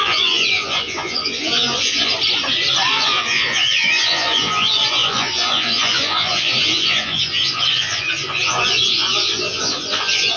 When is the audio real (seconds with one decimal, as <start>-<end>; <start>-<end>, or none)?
2.1-2.9